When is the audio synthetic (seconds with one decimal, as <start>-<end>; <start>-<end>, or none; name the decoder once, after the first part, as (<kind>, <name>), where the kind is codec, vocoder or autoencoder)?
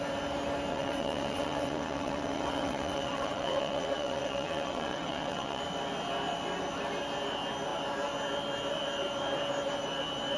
0.7-5.6 (vocoder, WaveNeXt)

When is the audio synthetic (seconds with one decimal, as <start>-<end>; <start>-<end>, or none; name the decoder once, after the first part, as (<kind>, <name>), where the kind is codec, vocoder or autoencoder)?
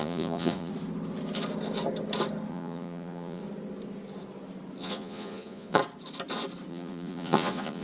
0.0-0.7 (vocoder, Vocos); 2.5-3.4; 4.8-5.8; 6.7-7.8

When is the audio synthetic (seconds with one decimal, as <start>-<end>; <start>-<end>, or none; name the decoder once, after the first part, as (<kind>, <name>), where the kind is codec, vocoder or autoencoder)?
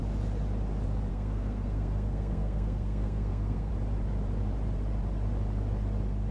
1.1-3.7 (codec, SNAC)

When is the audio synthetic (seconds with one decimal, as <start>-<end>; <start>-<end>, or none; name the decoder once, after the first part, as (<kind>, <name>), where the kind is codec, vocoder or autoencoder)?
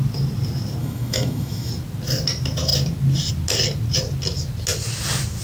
0.8-1.7 (autoencoder, DAC-VAE)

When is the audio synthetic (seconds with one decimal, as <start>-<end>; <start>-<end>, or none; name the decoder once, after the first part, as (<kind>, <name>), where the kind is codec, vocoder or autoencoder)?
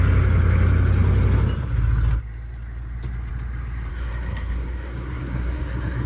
3.9-6.1 (codec, SNAC)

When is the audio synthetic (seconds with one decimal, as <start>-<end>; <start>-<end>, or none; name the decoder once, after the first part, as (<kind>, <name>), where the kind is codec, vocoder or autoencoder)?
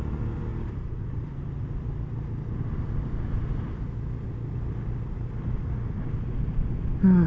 none